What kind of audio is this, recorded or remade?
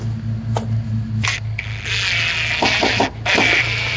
recorded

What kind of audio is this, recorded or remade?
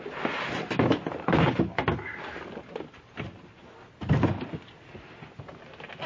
recorded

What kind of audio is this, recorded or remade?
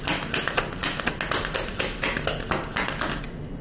recorded